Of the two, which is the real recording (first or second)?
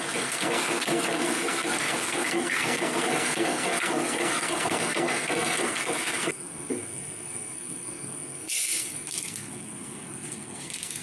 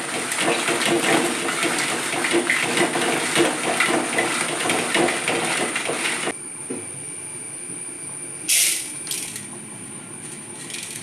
second